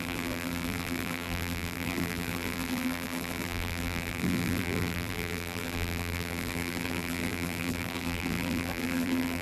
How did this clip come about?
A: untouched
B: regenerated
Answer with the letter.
B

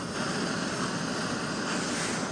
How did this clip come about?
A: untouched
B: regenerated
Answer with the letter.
A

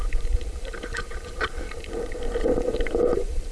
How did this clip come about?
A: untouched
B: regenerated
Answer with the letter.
B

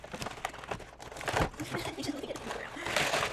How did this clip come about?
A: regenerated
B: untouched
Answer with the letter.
B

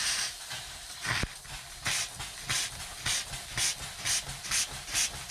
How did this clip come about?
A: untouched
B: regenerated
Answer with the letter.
A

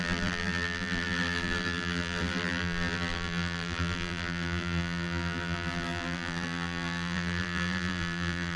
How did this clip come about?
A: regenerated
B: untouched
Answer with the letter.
A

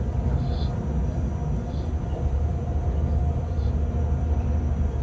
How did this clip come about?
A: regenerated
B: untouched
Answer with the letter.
A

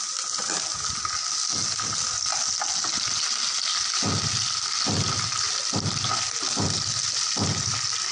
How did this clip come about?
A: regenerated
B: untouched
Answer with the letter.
B